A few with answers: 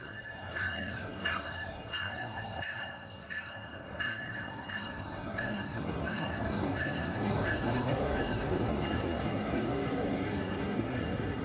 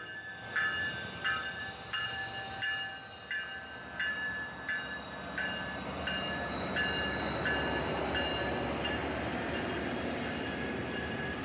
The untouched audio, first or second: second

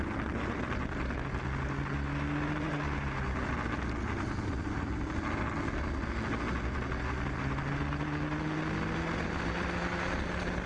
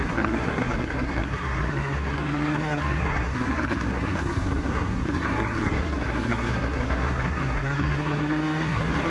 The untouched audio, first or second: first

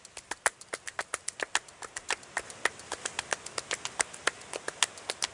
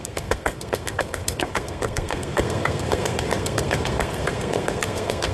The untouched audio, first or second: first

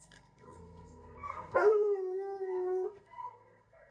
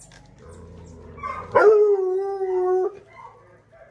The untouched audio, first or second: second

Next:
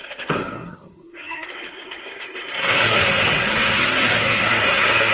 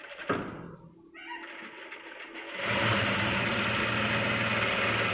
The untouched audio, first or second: second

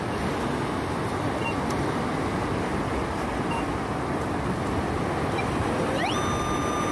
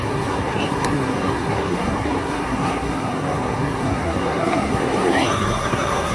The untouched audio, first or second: first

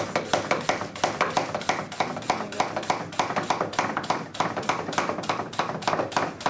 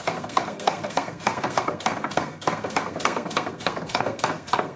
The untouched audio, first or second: first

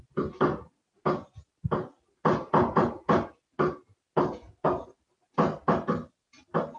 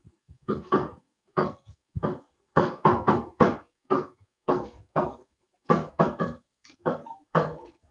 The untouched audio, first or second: first